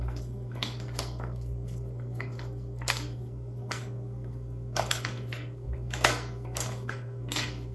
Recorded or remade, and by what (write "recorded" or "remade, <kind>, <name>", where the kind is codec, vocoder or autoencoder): remade, codec, SNAC